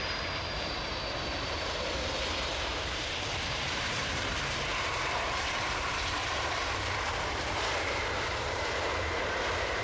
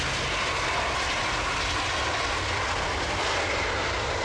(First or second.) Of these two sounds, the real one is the second